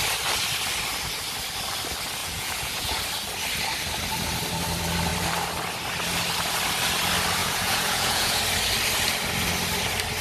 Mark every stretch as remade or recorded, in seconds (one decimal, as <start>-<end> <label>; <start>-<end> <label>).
0.0-2.2 recorded; 2.2-3.0 remade; 3.0-7.4 recorded; 7.4-8.4 remade; 8.4-10.2 recorded